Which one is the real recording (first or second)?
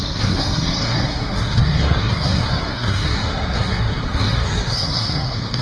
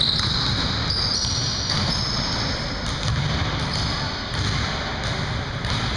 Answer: second